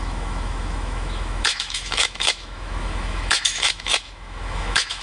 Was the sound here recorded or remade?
remade